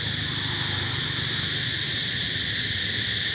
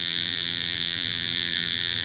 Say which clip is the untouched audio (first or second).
first